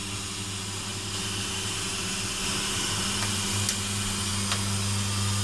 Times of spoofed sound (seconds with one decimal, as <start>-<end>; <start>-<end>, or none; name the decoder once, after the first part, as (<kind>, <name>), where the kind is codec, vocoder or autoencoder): none